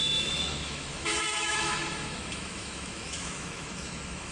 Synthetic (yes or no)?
yes